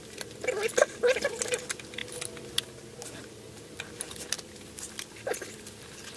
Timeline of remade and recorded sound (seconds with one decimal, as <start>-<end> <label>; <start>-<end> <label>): 0.0-6.2 recorded